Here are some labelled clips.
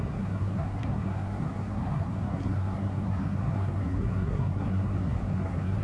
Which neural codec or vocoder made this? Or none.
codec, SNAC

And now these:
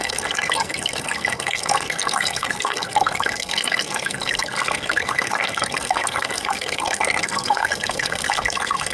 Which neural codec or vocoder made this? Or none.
codec, SNAC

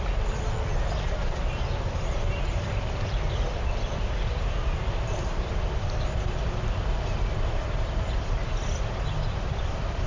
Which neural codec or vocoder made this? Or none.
none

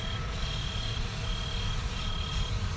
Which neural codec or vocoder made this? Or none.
none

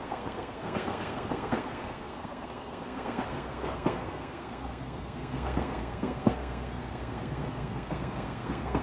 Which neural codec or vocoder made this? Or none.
codec, SNAC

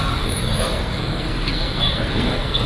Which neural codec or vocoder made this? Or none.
codec, SNAC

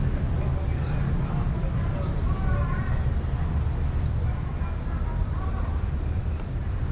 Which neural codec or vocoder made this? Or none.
none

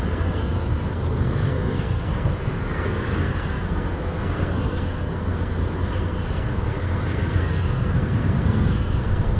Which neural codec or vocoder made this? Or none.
codec, SNAC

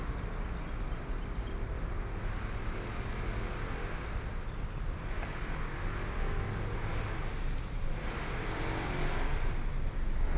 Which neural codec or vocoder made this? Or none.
none